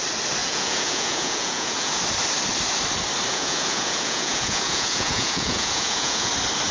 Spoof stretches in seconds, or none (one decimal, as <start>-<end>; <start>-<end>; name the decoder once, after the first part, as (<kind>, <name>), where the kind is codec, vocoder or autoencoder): 0.4-2.0 (vocoder, Vocos); 3.3-6.3